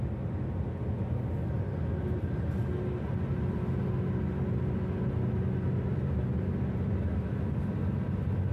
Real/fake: real